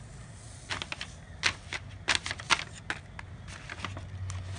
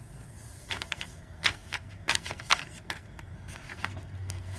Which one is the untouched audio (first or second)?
first